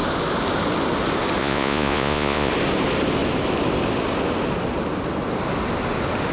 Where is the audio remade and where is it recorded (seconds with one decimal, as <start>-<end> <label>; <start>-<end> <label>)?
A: 0.0-1.4 recorded; 1.4-2.5 remade; 2.5-6.3 recorded

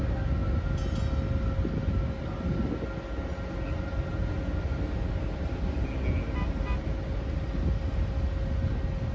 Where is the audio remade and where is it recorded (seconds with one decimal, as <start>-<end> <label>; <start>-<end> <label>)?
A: 0.0-9.1 recorded

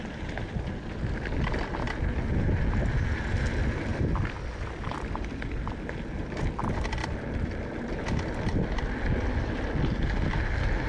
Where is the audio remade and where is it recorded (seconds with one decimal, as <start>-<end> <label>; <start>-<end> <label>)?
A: 0.0-10.9 recorded

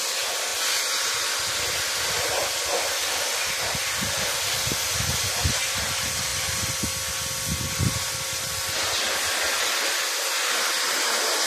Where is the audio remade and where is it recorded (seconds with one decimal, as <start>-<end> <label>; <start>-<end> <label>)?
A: 0.0-11.5 recorded

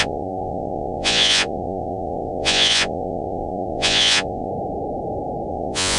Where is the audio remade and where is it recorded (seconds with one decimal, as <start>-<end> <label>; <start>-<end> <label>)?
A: 0.0-4.5 remade; 4.5-5.5 recorded; 5.5-6.0 remade